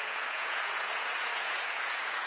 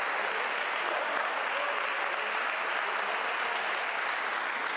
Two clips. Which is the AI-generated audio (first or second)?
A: first